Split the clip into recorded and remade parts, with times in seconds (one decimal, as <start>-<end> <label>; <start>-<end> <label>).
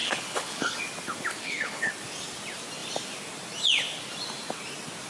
0.0-0.8 remade; 0.8-1.4 recorded; 1.4-1.9 remade; 1.9-5.1 recorded